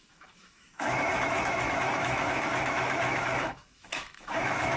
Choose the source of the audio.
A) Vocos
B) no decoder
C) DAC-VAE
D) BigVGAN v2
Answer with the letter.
C